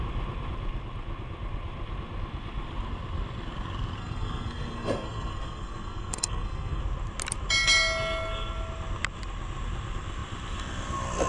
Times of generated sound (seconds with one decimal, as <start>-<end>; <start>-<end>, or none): 4.0-6.8